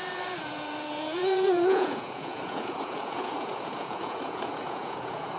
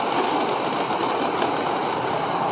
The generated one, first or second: first